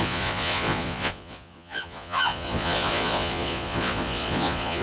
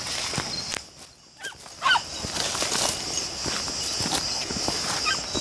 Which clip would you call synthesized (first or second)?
first